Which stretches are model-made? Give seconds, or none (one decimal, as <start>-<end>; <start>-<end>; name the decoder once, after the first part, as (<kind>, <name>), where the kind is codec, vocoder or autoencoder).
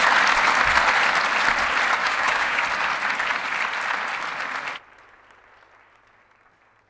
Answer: 2.0-2.6 (codec, DAC)